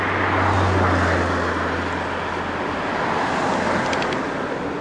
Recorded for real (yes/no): yes